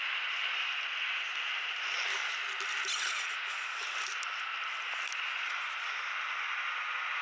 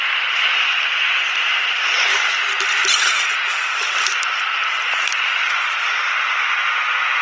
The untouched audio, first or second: first